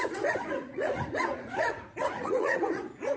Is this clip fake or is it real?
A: fake